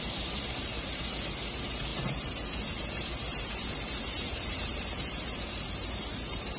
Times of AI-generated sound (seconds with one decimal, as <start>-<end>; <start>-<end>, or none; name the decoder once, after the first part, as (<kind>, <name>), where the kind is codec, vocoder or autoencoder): 0.0-6.6 (vocoder, BigVGAN v2)